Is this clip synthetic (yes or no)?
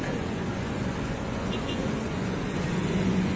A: yes